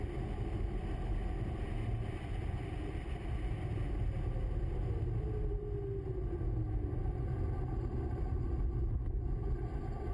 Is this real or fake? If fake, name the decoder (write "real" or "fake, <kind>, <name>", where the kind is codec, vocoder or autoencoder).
real